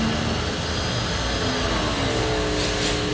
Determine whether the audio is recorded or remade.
recorded